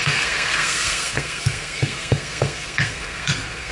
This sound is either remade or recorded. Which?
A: remade